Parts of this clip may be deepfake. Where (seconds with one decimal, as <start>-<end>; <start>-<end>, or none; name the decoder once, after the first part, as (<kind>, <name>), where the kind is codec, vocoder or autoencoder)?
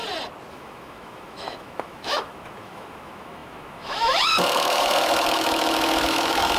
0.5-6.6 (autoencoder, DAC-VAE)